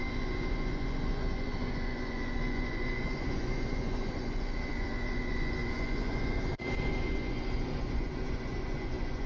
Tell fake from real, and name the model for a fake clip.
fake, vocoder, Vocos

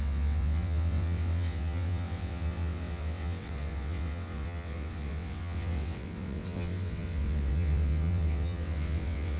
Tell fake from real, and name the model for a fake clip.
fake, vocoder, WaveNeXt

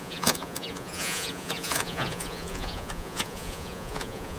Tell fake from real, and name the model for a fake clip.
fake, vocoder, Vocos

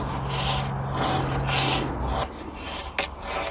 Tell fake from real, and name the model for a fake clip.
real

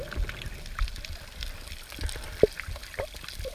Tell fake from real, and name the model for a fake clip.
real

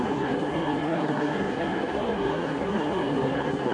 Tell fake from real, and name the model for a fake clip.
fake, codec, SNAC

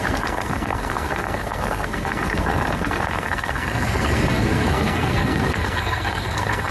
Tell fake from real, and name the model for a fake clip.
fake, codec, SNAC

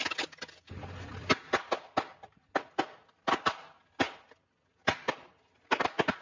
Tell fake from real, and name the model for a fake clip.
real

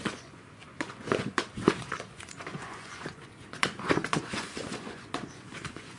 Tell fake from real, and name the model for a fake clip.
fake, vocoder, Vocos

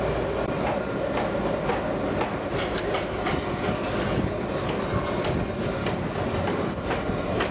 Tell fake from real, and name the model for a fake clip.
real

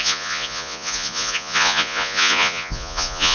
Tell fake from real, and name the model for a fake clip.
fake, vocoder, Vocos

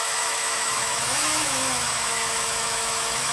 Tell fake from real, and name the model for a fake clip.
fake, autoencoder, DAC-VAE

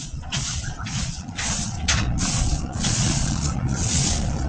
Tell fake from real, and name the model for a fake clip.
fake, vocoder, Vocos